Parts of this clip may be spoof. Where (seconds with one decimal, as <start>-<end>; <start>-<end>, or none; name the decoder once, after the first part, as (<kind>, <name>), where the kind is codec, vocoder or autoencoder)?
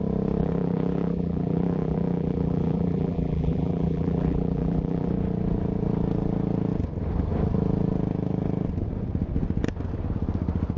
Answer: 0.4-5.1 (vocoder, BigVGAN v2)